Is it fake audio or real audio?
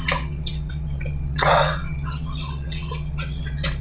fake